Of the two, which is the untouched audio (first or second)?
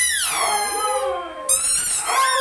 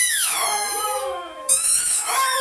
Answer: first